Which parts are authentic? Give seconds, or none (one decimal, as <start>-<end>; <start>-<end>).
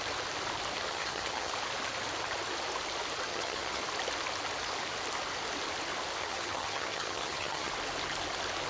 0.0-0.9; 1.5-3.3; 3.8-6.2; 7.7-8.7